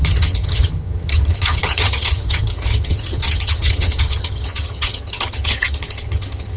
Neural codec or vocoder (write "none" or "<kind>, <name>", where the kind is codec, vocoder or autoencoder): vocoder, HiFi-GAN